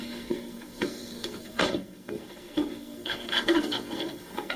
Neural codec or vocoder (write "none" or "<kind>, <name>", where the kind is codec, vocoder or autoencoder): codec, SNAC